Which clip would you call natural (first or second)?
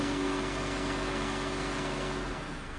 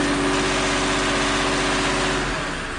second